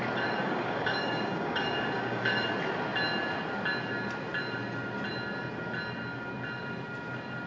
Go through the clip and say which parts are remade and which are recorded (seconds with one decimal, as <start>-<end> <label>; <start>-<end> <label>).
0.0-0.4 recorded; 0.4-2.5 remade; 2.5-7.5 recorded

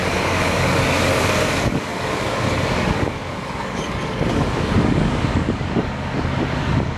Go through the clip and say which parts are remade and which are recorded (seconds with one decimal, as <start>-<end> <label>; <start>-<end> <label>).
0.0-7.0 remade

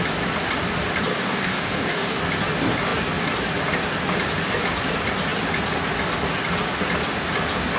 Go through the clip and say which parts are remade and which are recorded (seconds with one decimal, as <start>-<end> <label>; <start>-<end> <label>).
0.0-1.1 recorded; 1.1-2.2 remade; 2.2-7.8 recorded

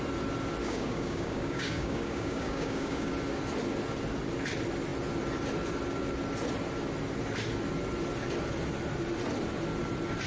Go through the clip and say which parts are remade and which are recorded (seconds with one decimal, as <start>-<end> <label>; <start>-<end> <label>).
0.0-0.6 recorded; 0.6-3.1 remade; 3.1-10.3 recorded